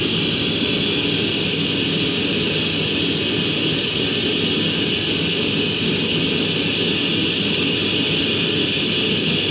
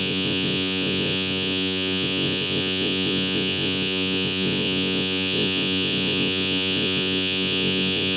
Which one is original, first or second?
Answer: first